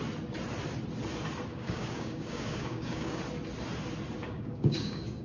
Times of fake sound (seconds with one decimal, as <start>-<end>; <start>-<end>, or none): 1.5-3.2; 4.2-5.2